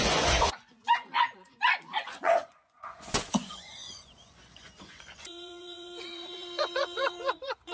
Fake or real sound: fake